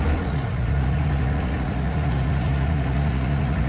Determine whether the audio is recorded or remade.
remade